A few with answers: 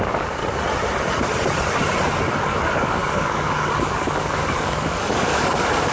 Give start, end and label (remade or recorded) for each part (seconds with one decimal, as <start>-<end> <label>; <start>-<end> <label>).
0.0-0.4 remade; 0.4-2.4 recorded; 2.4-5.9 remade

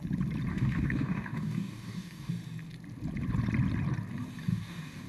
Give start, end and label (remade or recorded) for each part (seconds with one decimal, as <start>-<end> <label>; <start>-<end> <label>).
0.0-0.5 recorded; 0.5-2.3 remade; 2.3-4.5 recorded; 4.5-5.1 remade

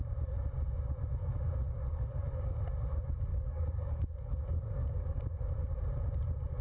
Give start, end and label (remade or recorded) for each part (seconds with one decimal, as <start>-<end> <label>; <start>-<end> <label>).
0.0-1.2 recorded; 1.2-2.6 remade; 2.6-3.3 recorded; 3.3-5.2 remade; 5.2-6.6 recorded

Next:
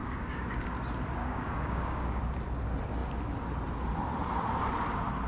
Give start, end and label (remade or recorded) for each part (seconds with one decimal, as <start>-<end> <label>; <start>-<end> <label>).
0.0-0.7 remade; 0.7-1.2 recorded; 1.2-2.2 remade; 2.2-5.3 recorded

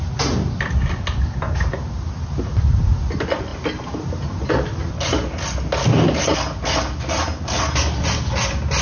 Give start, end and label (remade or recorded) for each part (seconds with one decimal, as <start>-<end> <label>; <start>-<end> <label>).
0.0-8.8 recorded

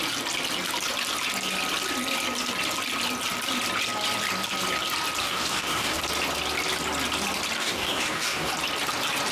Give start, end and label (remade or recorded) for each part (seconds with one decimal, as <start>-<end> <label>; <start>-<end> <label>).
0.0-5.2 recorded; 5.2-6.0 remade; 6.0-7.6 recorded; 7.6-8.5 remade; 8.5-9.3 recorded

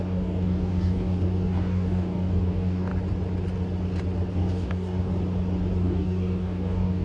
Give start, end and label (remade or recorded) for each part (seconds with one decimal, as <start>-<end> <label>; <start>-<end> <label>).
0.0-2.9 remade; 2.9-4.3 recorded; 4.3-5.1 remade; 5.1-5.8 recorded; 5.8-7.0 remade

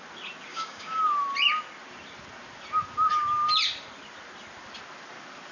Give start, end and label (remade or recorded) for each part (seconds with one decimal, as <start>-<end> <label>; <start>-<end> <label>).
0.0-0.5 recorded; 0.5-1.0 remade; 1.0-5.5 recorded